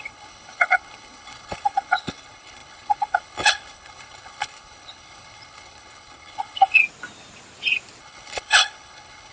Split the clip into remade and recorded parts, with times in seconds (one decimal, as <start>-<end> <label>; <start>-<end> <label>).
0.0-6.8 remade; 6.8-8.0 recorded; 8.0-9.3 remade